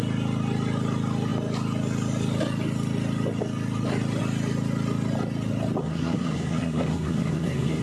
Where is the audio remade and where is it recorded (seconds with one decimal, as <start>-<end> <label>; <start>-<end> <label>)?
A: 0.0-5.8 recorded; 5.8-7.8 remade